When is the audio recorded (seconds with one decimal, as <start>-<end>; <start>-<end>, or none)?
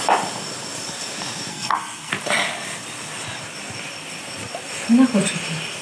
0.0-1.5; 2.1-5.8